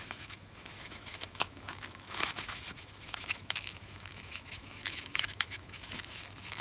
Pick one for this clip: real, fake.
fake